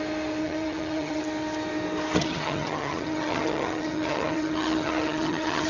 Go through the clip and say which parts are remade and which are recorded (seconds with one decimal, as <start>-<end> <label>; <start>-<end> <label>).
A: 0.0-0.4 recorded; 0.4-1.2 remade; 1.2-2.2 recorded; 2.2-5.7 remade